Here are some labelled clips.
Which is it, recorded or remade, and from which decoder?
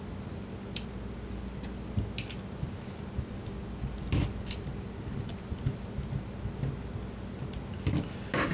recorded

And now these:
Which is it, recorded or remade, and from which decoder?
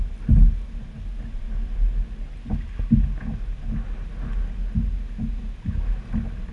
recorded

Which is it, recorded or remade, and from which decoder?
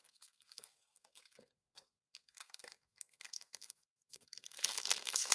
remade, codec, SNAC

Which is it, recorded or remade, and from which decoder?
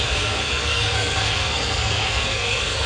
remade, codec, SNAC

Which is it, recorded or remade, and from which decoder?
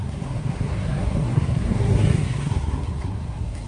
remade, codec, SNAC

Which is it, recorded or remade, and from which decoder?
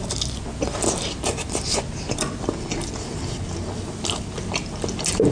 recorded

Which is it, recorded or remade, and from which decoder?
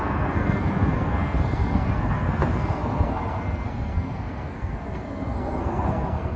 remade, codec, SNAC